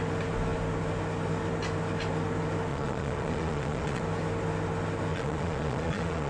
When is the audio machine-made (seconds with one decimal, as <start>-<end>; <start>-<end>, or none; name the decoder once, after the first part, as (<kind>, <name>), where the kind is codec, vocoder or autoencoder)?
2.7-4.0 (vocoder, Vocos); 5.1-6.3